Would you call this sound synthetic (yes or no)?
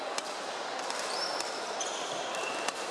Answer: yes